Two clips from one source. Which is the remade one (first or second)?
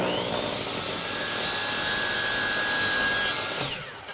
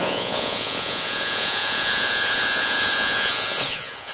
second